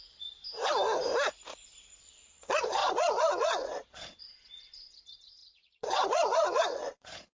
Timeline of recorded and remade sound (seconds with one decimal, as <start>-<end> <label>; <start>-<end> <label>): 0.0-0.4 remade; 0.4-2.0 recorded; 2.0-7.4 remade